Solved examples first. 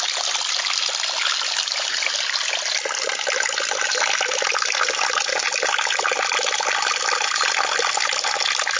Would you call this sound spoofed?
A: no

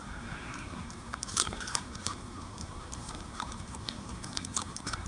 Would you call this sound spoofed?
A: yes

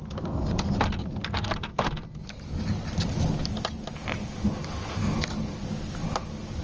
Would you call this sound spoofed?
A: no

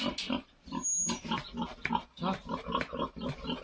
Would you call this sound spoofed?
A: no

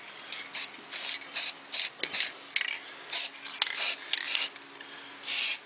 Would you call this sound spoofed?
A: no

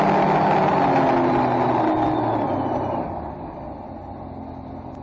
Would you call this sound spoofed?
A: no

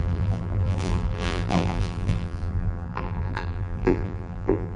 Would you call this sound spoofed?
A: yes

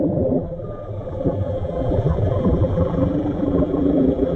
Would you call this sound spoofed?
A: yes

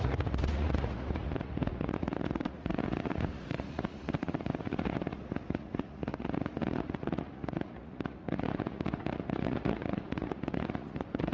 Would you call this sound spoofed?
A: yes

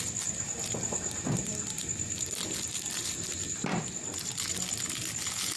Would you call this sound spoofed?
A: no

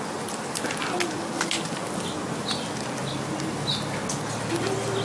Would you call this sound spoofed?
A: no